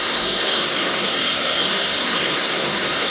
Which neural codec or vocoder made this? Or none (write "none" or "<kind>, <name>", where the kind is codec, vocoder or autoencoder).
codec, SNAC